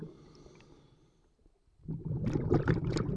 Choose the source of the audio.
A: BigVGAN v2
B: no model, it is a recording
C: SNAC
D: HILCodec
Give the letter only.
B